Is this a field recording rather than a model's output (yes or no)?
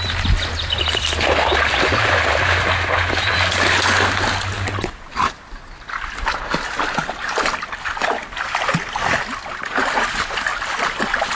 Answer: yes